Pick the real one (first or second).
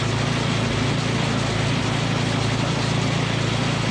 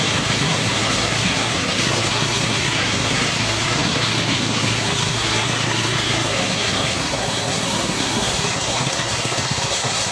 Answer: first